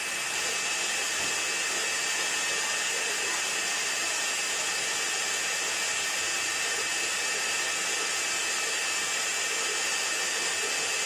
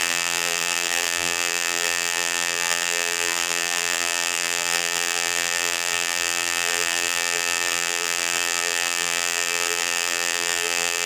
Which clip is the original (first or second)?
first